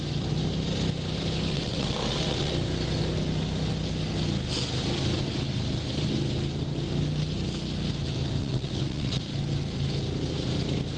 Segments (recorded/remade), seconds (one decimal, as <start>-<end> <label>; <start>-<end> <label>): 0.0-1.5 recorded; 1.5-2.5 remade; 2.5-8.4 recorded; 8.4-9.2 remade; 9.2-11.0 recorded